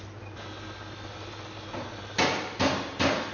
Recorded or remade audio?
recorded